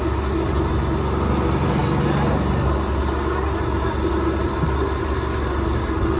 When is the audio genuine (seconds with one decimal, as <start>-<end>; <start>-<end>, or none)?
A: 0.0-6.2

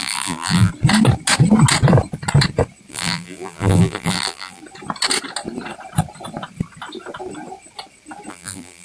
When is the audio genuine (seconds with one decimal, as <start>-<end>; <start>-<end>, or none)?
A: 0.7-2.9; 4.6-8.3

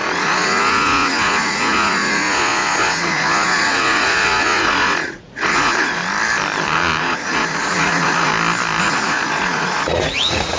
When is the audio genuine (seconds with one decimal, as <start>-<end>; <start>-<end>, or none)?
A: 6.0-7.0; 8.3-8.8

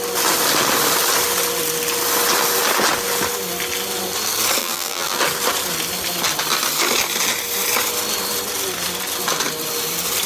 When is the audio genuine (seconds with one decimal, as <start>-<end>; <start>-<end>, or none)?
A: 0.0-4.6; 5.2-10.3

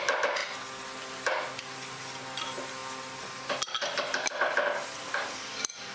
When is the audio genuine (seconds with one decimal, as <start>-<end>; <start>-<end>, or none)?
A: 0.0-5.9